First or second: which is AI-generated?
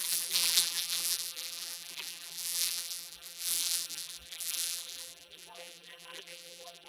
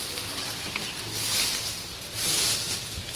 first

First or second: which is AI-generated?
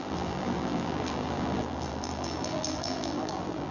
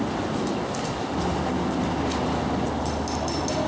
first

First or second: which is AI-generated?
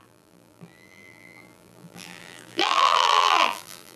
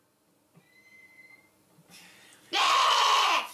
first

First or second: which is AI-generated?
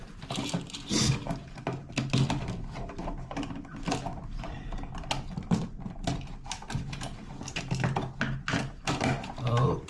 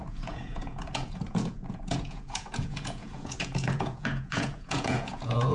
second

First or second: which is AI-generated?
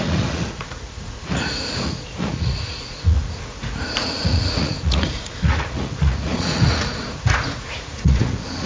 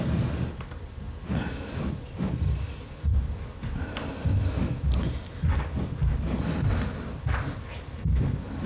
first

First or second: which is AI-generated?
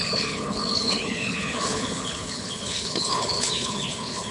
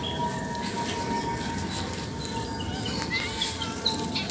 first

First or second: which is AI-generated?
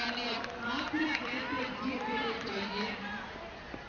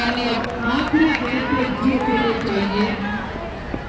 first